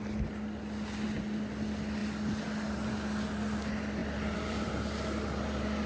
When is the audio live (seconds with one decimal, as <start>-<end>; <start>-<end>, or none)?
0.0-4.0; 4.7-5.9